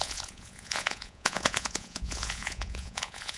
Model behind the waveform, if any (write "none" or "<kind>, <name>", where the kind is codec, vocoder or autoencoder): vocoder, Vocos